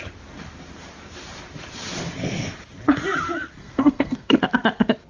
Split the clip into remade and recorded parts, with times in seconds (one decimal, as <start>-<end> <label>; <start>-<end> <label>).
0.0-3.6 recorded; 3.6-4.4 remade; 4.4-5.1 recorded